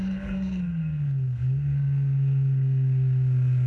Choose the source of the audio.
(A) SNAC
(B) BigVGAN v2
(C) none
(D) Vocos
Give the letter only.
A